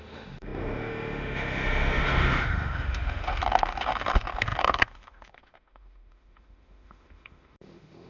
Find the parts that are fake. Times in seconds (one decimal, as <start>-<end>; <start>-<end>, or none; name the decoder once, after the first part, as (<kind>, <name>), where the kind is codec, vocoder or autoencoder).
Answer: 0.0-8.1 (autoencoder, DAC-VAE)